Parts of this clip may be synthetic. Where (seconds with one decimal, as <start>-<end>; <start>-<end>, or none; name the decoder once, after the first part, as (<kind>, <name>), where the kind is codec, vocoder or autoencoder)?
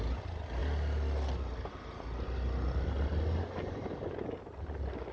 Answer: none